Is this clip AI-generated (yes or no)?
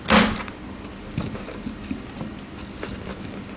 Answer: no